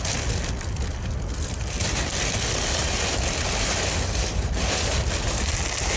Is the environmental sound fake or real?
real